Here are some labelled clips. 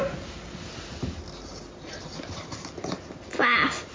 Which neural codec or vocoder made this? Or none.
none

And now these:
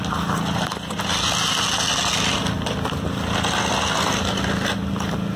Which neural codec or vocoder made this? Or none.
none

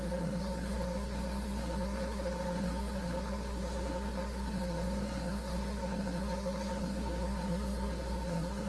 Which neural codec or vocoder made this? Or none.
codec, SNAC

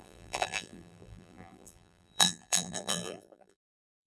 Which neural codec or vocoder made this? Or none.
vocoder, BigVGAN v2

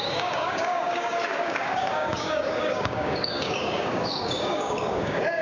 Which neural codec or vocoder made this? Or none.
codec, DAC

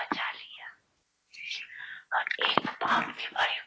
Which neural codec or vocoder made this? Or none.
none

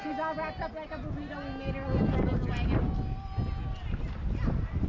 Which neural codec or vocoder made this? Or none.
none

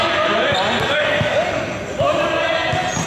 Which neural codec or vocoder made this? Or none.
none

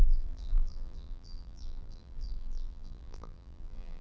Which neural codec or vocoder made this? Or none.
vocoder, BigVGAN v2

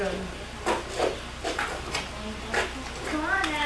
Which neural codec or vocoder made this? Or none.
none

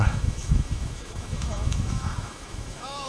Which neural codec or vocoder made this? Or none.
autoencoder, DAC-VAE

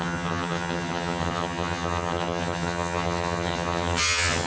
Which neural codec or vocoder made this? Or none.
vocoder, HiFi-GAN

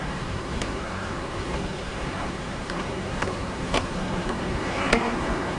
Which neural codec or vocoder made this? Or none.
codec, SNAC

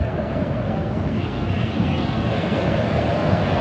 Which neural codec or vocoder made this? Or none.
codec, SNAC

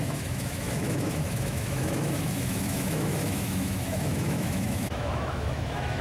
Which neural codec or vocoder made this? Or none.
autoencoder, DAC-VAE